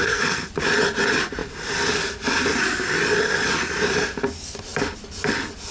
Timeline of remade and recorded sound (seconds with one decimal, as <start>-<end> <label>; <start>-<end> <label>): 0.0-0.5 remade; 0.5-5.7 recorded